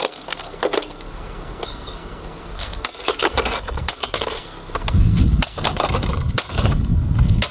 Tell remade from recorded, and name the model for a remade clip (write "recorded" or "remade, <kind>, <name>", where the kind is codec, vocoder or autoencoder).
remade, codec, SNAC